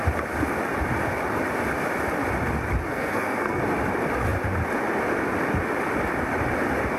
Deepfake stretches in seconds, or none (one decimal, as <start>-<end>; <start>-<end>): 2.9-3.6